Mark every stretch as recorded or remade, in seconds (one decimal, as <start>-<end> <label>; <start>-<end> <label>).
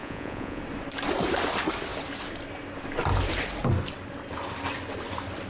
0.0-0.6 remade; 0.6-5.5 recorded